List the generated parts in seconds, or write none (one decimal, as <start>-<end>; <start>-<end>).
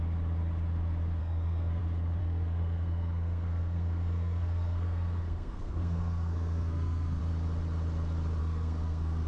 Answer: 1.2-1.8; 2.2-7.2; 8.4-9.3